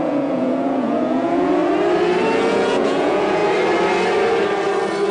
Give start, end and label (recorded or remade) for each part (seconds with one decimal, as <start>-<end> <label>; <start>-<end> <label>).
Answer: 0.0-1.6 remade; 1.6-2.5 recorded; 2.5-3.4 remade; 3.4-5.1 recorded